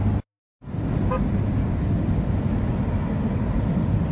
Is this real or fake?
real